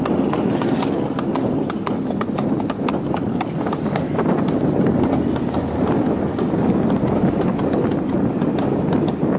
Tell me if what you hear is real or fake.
real